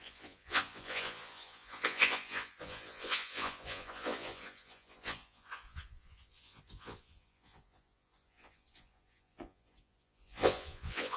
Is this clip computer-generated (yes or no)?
yes